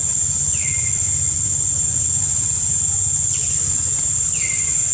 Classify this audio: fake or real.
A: real